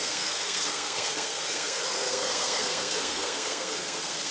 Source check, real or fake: fake